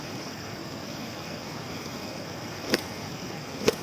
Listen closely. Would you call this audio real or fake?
fake